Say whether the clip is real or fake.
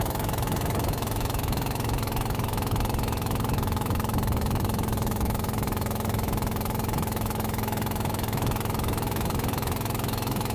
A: fake